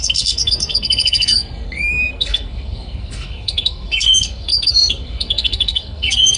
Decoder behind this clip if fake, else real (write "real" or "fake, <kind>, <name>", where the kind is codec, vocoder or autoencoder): fake, codec, SNAC